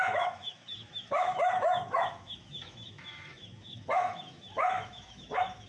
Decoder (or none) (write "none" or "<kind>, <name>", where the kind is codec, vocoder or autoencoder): autoencoder, DAC-VAE